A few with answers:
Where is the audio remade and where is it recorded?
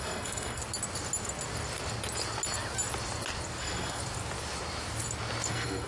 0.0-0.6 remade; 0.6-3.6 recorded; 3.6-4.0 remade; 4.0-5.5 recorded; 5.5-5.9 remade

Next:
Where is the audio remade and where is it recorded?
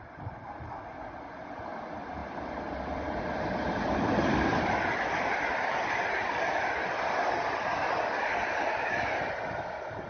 0.0-10.1 recorded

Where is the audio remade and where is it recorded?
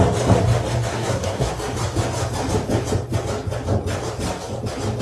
0.0-0.9 recorded; 0.9-1.5 remade; 1.5-5.0 recorded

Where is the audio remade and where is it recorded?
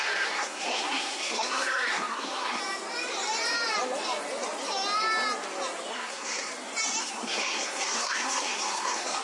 0.0-2.6 remade; 2.6-5.9 recorded; 5.9-6.5 remade; 6.5-7.0 recorded; 7.0-9.2 remade